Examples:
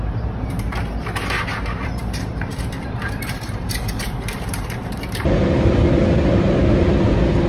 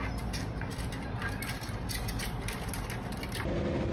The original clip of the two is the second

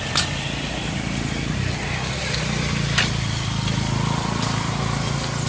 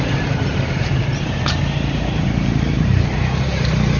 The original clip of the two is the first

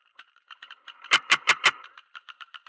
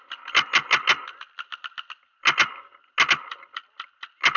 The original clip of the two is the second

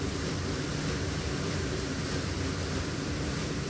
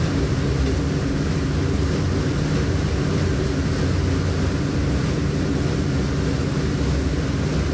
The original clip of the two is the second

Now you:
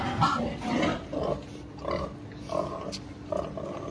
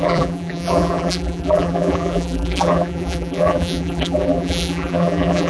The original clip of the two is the first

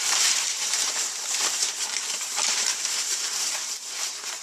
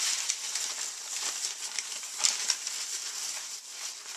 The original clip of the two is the second